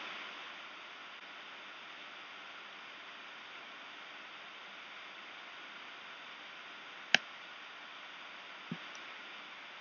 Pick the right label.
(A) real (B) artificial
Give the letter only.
A